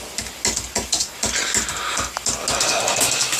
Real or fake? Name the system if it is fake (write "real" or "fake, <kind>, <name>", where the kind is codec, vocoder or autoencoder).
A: real